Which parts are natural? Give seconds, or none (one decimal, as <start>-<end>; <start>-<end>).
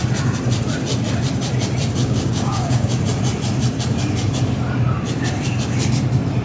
0.0-2.0; 2.9-6.4